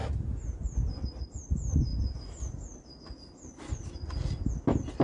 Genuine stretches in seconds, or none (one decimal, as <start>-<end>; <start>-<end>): 0.0-5.0

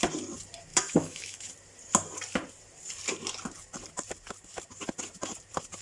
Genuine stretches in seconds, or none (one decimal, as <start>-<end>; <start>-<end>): 0.0-0.7; 1.5-5.8

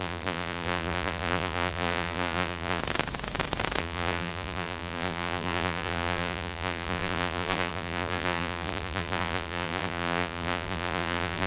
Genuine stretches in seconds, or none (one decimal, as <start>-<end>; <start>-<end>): 2.8-3.8

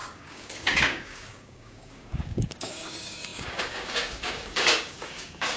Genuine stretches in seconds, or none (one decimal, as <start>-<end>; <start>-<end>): none

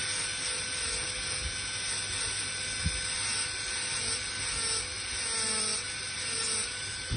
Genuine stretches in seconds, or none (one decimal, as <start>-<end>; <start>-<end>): 0.0-7.2

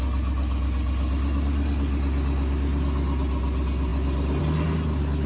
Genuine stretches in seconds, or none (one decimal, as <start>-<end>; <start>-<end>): 0.0-5.3

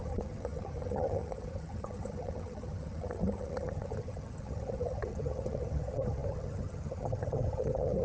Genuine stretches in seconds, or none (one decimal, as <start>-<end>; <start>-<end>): none

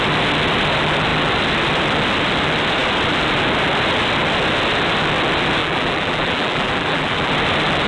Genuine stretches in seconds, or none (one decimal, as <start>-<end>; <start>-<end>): 0.0-5.6; 7.3-7.9